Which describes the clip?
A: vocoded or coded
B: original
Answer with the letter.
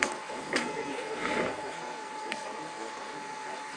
A